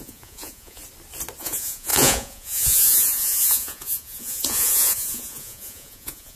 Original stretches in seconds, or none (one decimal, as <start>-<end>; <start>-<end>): 0.8-1.4